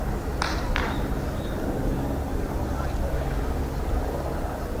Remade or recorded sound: recorded